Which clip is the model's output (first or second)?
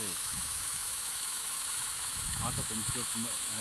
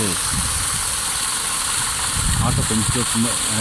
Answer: first